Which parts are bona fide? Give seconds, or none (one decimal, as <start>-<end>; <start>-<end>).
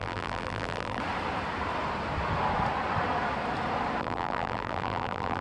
1.0-4.0